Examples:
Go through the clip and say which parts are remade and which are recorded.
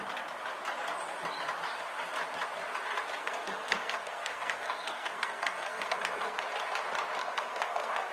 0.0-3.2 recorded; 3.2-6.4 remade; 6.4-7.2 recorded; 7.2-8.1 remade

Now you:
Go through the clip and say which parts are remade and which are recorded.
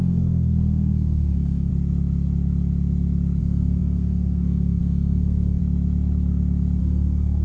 0.0-1.7 remade; 1.7-3.4 recorded; 3.4-5.6 remade; 5.6-6.8 recorded; 6.8-7.4 remade